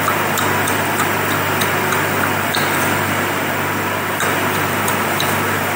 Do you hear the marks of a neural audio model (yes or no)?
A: no